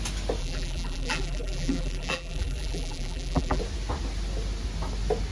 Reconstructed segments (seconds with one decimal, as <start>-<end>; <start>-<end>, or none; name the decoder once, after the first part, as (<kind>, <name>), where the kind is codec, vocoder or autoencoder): 0.4-3.6 (vocoder, BigVGAN v2)